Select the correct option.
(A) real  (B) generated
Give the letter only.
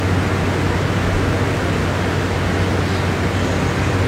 A